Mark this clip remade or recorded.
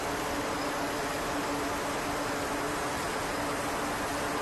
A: recorded